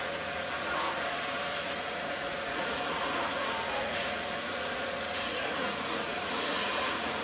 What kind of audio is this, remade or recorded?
remade